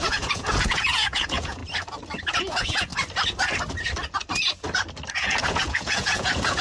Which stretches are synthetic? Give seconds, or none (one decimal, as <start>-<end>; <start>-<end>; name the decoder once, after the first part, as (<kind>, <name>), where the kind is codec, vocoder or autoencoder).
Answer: 0.0-1.6 (vocoder, Vocos); 2.4-2.9; 5.1-6.6